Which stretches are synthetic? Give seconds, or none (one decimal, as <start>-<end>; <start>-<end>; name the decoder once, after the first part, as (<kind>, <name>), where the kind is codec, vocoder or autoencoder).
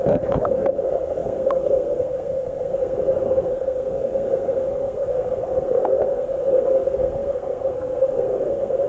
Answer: 0.0-8.9 (codec, SNAC)